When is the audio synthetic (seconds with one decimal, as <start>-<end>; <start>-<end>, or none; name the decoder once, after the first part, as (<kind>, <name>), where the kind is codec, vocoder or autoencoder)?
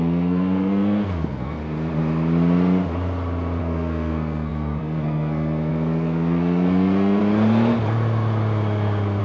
0.0-1.6 (codec, SNAC); 3.6-7.2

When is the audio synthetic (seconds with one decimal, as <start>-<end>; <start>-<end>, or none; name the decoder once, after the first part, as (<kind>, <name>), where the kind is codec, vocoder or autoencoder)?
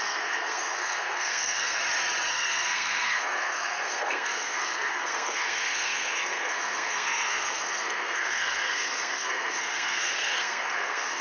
0.0-1.8 (codec, SNAC); 2.3-11.2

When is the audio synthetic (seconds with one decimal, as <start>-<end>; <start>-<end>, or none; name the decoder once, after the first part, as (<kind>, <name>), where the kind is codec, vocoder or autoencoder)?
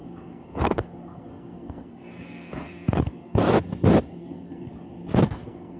0.0-3.5 (codec, SNAC); 4.2-4.7; 5.2-5.8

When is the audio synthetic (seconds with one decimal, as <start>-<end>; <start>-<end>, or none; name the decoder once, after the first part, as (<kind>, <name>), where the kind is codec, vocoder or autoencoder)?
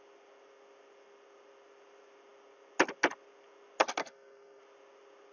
4.0-4.6 (codec, SNAC)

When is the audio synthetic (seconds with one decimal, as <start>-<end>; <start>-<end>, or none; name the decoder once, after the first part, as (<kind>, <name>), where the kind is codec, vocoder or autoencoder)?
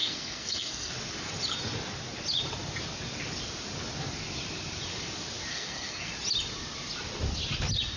0.0-0.9 (codec, SNAC); 5.5-6.1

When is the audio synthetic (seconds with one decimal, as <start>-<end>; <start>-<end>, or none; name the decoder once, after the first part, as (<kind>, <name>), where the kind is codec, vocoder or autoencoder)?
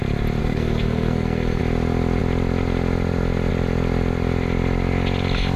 0.4-1.6 (codec, SNAC)